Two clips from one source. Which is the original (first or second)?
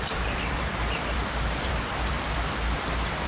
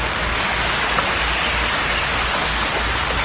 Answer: second